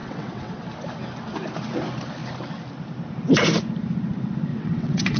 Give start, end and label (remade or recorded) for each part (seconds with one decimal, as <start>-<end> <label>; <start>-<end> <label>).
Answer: 0.0-0.6 remade; 0.6-4.5 recorded; 4.5-5.2 remade